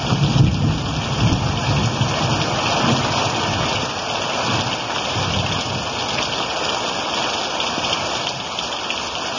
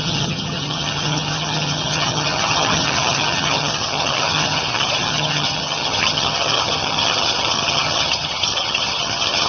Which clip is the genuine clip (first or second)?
first